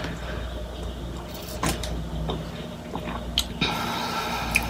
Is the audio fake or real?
real